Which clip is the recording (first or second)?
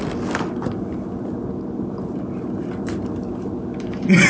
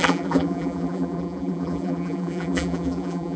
first